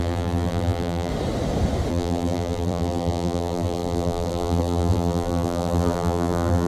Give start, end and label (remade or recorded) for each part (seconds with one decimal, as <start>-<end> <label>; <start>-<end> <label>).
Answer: 0.0-1.1 remade; 1.1-1.9 recorded; 1.9-6.7 remade